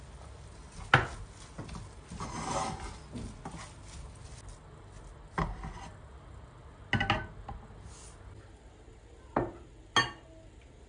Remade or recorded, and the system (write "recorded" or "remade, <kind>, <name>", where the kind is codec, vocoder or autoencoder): recorded